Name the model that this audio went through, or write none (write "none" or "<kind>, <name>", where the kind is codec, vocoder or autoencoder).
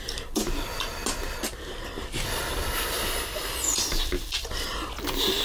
none